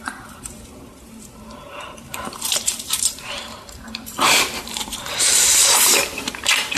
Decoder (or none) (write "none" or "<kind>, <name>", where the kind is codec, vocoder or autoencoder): vocoder, BigVGAN v2